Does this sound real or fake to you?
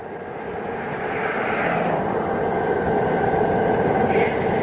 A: real